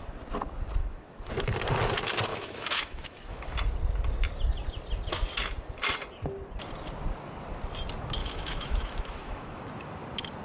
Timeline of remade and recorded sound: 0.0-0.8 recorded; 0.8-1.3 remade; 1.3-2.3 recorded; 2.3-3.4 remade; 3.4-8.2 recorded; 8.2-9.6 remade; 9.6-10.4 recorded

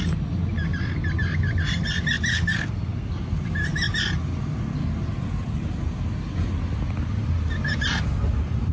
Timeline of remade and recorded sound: 0.0-2.3 recorded; 2.3-3.1 remade; 3.1-8.7 recorded

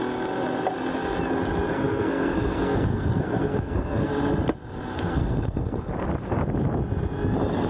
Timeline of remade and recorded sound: 0.0-1.7 recorded; 1.7-4.1 remade; 4.1-4.9 recorded; 4.9-5.9 remade; 5.9-7.7 recorded

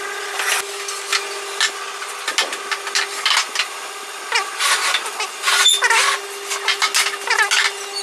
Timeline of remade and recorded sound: 0.0-8.0 recorded